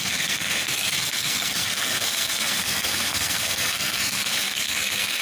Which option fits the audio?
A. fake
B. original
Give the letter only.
A